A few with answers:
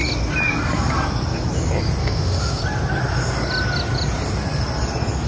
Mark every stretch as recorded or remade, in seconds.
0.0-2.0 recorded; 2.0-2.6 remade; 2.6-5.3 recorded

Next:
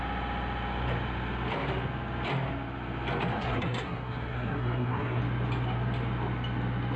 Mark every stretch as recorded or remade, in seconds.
0.0-3.3 recorded; 3.3-5.2 remade; 5.2-7.0 recorded

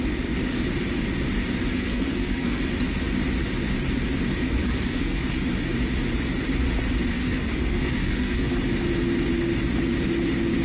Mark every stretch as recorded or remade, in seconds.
0.0-1.7 recorded; 1.7-2.6 remade; 2.6-4.6 recorded; 4.6-5.4 remade; 5.4-7.1 recorded; 7.1-8.5 remade; 8.5-10.6 recorded